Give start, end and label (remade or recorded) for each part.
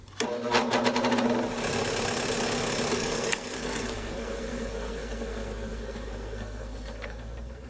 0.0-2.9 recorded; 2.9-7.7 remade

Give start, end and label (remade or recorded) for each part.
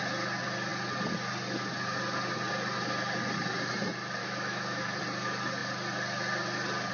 0.0-4.2 recorded; 4.2-5.0 remade; 5.0-6.9 recorded